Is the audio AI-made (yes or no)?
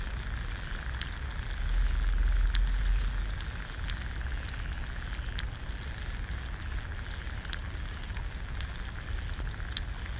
no